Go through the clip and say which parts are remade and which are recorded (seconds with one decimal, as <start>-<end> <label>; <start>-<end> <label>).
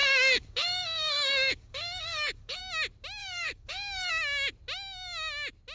0.0-2.6 remade; 2.6-3.2 recorded; 3.2-4.1 remade; 4.1-5.7 recorded